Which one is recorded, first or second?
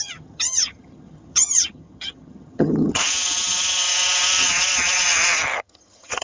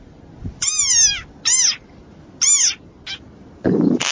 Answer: second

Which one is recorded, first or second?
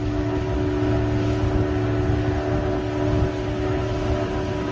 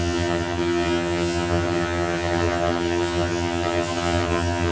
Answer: first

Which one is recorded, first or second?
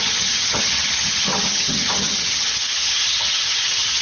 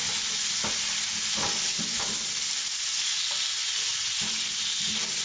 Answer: second